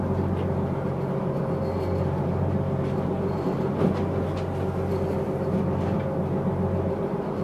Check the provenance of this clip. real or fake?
real